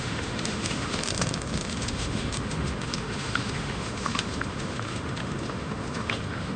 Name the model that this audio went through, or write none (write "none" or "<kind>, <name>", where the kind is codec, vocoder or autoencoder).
autoencoder, DAC-VAE